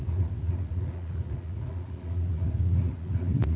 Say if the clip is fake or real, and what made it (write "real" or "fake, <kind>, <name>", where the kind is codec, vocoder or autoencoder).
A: fake, vocoder, Vocos